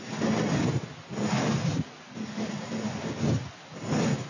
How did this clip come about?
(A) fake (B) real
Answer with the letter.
B